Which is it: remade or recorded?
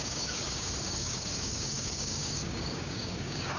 remade